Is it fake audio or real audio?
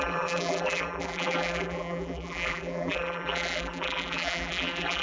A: fake